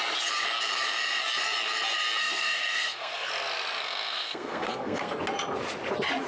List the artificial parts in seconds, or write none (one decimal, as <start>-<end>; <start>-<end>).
2.2-3.3; 3.8-5.2